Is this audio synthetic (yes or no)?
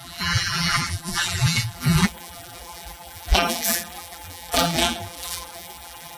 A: yes